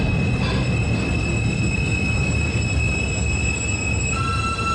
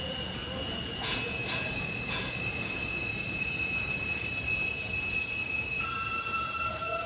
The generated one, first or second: second